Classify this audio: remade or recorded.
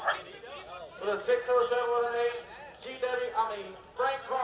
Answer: recorded